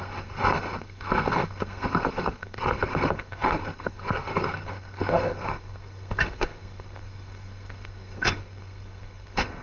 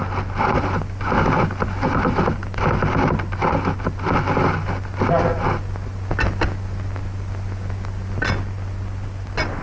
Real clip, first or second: second